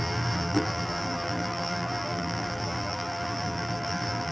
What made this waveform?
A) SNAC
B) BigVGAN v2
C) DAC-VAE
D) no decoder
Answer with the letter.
B